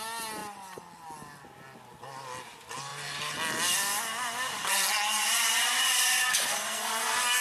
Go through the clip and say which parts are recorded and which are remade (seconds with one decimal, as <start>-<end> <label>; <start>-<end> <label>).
0.0-6.3 recorded; 6.3-7.4 remade